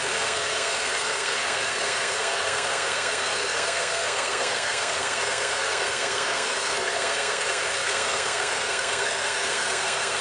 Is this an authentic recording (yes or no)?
no